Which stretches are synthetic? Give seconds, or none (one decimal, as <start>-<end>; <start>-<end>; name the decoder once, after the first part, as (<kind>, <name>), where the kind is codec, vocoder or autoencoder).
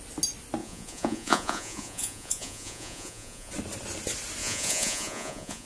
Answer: 0.6-3.5 (vocoder, Vocos); 4.4-5.7